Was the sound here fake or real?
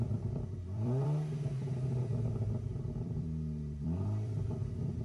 fake